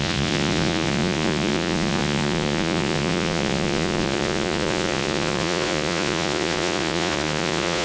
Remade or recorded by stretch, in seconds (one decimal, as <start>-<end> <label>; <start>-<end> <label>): 0.0-7.8 remade

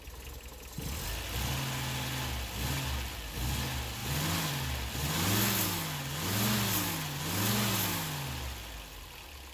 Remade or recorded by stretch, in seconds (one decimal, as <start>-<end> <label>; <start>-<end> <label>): 0.0-9.5 recorded

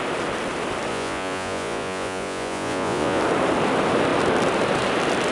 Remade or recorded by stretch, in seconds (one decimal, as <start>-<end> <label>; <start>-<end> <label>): 0.0-0.9 recorded; 0.9-3.2 remade; 3.2-5.3 recorded

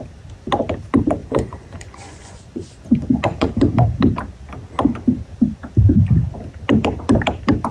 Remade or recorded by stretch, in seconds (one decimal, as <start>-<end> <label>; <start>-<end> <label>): 0.0-1.2 recorded; 1.2-3.5 remade; 3.5-7.7 recorded